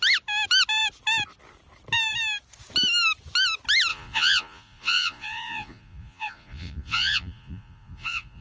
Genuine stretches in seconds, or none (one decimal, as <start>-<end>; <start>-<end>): 0.0-3.9